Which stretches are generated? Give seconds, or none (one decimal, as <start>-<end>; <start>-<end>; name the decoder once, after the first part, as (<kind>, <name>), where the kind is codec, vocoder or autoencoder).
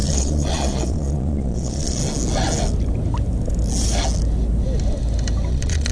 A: 0.0-2.0 (vocoder, Vocos); 5.5-5.9